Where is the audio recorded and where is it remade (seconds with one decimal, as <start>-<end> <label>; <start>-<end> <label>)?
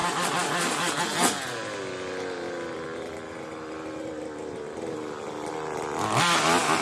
0.0-6.8 recorded